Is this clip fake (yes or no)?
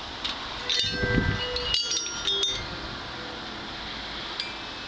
no